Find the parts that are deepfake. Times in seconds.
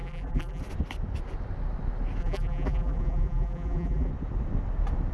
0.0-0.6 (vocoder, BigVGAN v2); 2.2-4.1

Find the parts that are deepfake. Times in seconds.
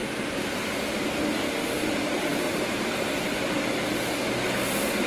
none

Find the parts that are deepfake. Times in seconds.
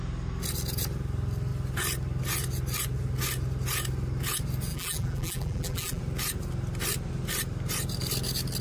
4.7-6.0 (vocoder, BigVGAN v2)